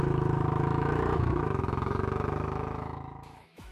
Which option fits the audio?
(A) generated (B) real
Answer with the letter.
A